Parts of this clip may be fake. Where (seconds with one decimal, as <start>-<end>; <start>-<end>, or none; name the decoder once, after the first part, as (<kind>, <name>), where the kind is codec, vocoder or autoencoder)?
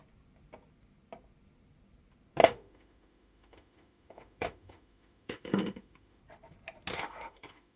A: 2.4-6.2 (autoencoder, DAC-VAE); 6.9-7.8